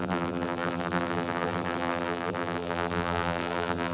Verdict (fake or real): fake